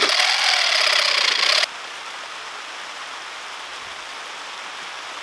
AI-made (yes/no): no